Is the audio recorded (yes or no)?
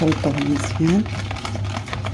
yes